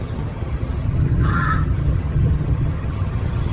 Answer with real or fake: fake